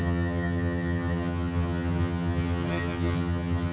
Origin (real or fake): fake